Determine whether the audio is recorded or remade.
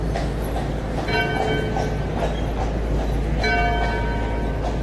recorded